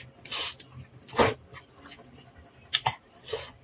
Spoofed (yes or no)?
no